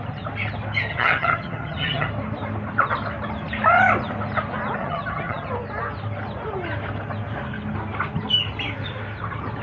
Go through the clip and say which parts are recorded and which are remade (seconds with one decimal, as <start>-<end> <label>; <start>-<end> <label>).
0.0-0.9 recorded; 0.9-2.1 remade; 2.1-4.8 recorded; 4.8-5.5 remade; 5.5-9.6 recorded